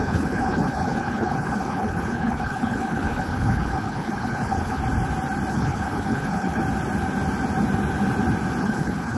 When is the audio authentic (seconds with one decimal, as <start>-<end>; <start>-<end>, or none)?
4.8-5.5; 6.6-8.6

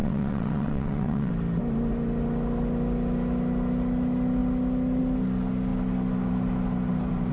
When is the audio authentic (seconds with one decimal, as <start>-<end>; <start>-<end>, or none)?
1.3-7.3

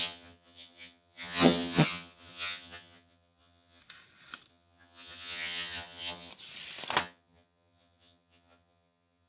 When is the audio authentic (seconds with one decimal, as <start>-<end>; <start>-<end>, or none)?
3.8-4.5; 6.3-7.0

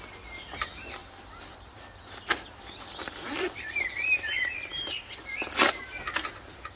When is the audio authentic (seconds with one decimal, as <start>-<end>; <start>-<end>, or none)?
0.0-1.0; 5.1-6.8

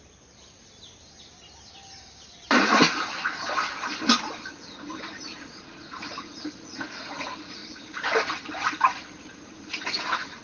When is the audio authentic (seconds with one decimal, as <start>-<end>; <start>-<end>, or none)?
0.0-4.5; 7.6-9.4